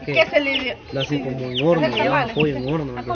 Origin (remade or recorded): recorded